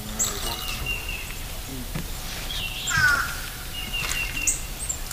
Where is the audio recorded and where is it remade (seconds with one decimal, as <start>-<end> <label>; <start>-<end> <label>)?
0.0-5.1 recorded